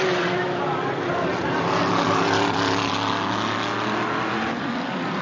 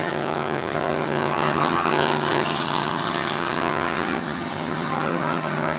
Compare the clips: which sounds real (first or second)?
first